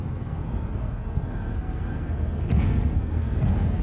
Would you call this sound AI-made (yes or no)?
yes